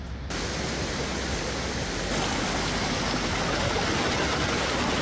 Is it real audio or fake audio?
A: real